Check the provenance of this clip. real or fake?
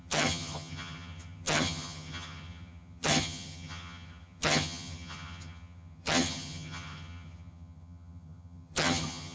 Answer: fake